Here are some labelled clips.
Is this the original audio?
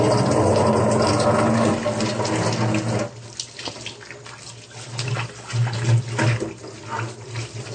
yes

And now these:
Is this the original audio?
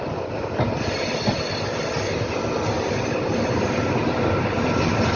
yes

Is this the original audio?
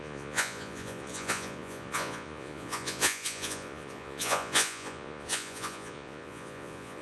no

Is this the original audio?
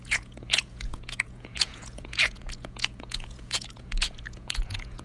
no